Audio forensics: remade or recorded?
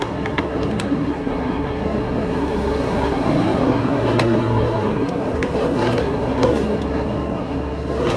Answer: remade